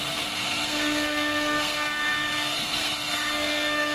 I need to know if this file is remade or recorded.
remade